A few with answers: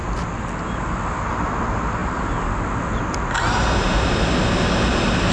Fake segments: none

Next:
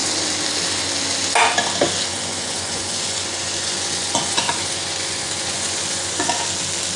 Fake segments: 2.1-6.3

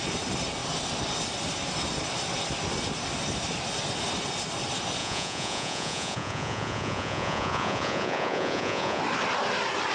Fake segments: 5.0-9.0